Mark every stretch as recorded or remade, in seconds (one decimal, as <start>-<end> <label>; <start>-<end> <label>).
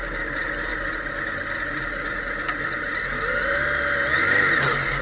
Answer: 0.0-5.0 recorded